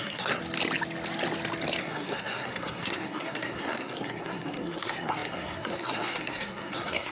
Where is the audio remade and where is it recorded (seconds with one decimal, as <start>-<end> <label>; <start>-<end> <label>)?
0.0-0.4 remade; 0.4-1.8 recorded; 1.8-7.1 remade